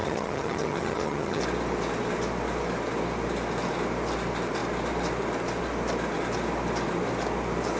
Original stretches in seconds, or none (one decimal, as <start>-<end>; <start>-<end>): 1.4-7.8